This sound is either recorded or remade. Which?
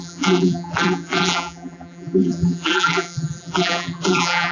remade